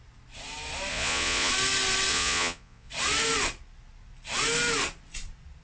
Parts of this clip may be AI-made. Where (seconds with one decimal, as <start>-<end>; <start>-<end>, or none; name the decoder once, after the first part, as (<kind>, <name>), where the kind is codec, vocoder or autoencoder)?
0.9-1.5 (vocoder, Vocos); 2.1-2.9